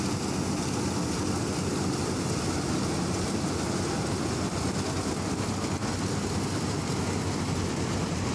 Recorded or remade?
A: recorded